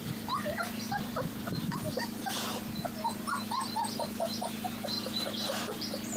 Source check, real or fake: fake